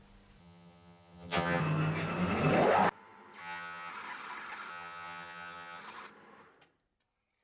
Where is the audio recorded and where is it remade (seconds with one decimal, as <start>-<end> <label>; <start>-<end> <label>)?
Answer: 0.0-0.4 recorded; 0.4-1.6 remade; 1.6-3.4 recorded; 3.4-3.9 remade; 3.9-4.7 recorded; 4.7-5.8 remade; 5.8-7.4 recorded